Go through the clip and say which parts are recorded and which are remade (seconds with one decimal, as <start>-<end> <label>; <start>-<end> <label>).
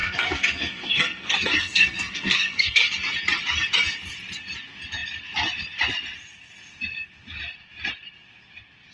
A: 0.0-2.9 remade; 2.9-8.9 recorded